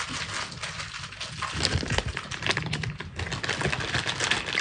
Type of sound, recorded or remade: recorded